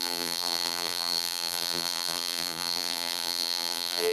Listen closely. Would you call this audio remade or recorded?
remade